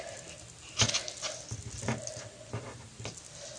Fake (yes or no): no